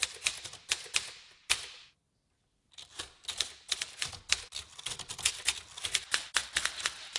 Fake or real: fake